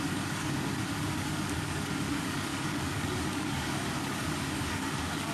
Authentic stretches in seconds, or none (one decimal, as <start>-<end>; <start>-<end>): none